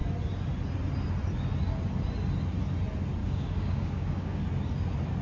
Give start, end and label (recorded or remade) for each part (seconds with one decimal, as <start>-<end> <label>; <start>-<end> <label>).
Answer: 0.0-3.2 recorded; 3.2-4.4 remade; 4.4-5.2 recorded